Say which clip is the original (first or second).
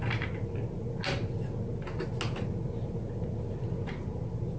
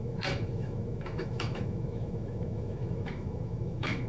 first